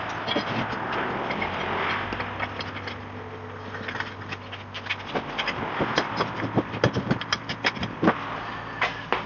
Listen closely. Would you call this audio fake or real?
real